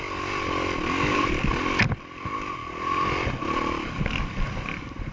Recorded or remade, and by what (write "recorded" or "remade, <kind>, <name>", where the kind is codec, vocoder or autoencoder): recorded